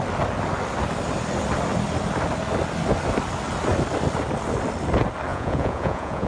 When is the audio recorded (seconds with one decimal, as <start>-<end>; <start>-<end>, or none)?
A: 0.0-5.3